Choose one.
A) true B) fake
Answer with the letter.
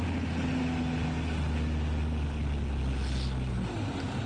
A